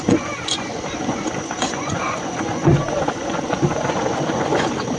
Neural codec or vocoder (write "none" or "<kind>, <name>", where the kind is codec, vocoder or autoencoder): vocoder, Vocos